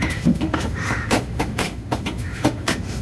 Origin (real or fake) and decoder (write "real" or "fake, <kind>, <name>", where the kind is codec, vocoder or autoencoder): fake, autoencoder, DAC-VAE